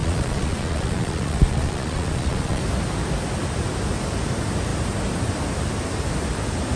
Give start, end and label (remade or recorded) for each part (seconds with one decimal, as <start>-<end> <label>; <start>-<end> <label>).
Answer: 0.0-2.6 remade; 2.6-6.8 recorded